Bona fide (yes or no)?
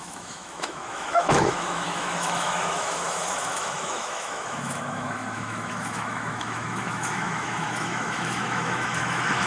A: no